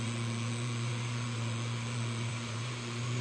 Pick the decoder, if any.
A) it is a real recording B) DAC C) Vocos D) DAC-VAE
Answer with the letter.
C